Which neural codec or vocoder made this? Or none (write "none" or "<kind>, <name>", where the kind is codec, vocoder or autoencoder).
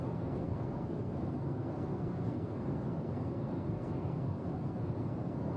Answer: codec, SNAC